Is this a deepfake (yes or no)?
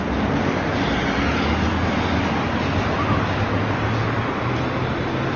no